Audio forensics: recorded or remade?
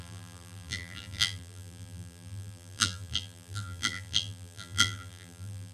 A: remade